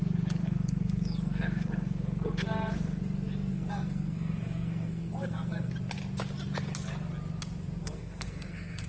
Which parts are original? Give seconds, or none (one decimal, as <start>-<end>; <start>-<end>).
0.0-0.4; 3.0-3.5; 5.7-7.8